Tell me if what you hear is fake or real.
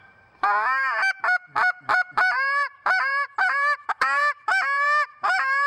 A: fake